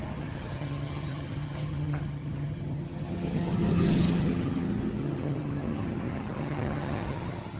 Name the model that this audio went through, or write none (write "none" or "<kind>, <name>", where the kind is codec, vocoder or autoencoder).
vocoder, HiFi-GAN